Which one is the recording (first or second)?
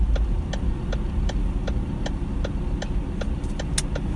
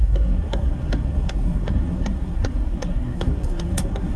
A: first